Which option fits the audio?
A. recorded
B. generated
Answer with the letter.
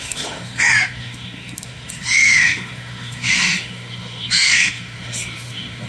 B